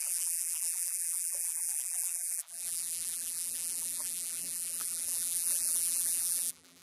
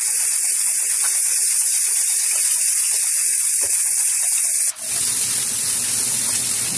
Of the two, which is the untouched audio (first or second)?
second